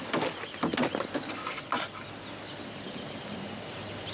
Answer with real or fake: real